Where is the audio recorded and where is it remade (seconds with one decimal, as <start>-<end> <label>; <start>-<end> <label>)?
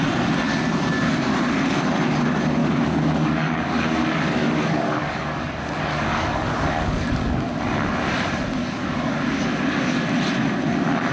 0.0-2.6 recorded; 2.6-7.6 remade; 7.6-8.6 recorded; 8.6-9.2 remade; 9.2-11.1 recorded